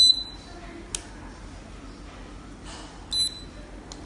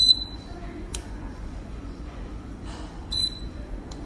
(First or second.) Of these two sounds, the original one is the first